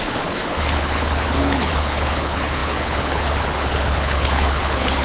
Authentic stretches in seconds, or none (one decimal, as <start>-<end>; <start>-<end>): none